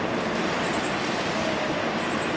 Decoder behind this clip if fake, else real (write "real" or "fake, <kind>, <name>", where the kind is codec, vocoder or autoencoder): fake, vocoder, BigVGAN v2